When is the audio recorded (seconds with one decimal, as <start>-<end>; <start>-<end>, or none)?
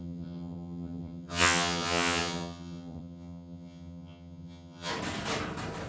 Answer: 4.9-5.9